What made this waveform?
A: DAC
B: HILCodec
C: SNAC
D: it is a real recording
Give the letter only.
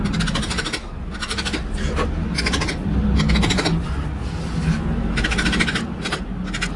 D